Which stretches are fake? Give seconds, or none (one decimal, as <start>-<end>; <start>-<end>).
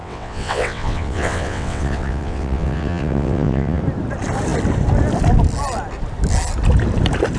0.0-3.8